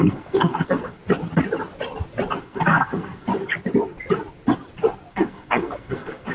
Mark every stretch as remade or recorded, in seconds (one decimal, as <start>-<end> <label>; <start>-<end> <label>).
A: 0.0-1.0 remade; 1.0-2.4 recorded; 2.4-3.3 remade; 3.3-5.1 recorded; 5.1-6.3 remade